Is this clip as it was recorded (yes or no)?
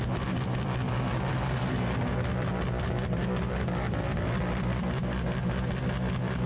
yes